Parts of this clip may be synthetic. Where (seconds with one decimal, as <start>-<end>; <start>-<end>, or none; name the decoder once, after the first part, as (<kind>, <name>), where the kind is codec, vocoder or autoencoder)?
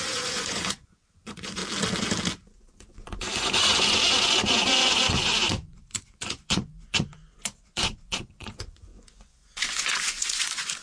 0.0-1.6 (vocoder, Vocos); 2.4-10.8